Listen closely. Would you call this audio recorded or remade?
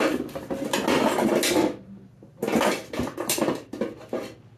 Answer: recorded